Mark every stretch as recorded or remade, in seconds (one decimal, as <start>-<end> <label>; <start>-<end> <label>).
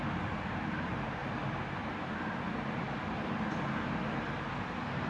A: 0.0-5.1 recorded